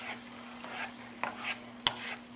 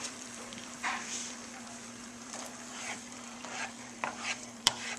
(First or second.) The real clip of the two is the first